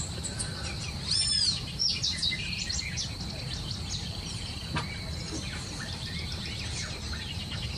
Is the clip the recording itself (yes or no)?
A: yes